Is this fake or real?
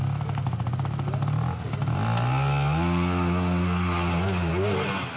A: real